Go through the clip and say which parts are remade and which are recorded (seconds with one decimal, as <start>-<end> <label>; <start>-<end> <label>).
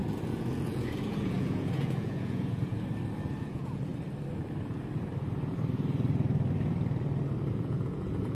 0.0-2.7 remade; 2.7-3.4 recorded; 3.4-3.9 remade; 3.9-7.5 recorded; 7.5-8.3 remade